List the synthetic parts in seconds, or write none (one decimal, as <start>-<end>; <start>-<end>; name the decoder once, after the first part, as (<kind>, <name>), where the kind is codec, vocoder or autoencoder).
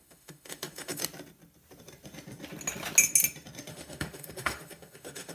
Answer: 0.0-1.0 (autoencoder, DAC-VAE); 3.7-5.3